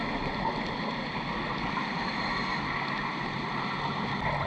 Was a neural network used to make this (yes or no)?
no